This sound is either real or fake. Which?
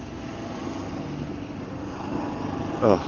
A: real